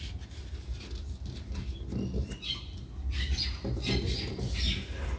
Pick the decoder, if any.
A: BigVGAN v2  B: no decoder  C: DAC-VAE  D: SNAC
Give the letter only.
B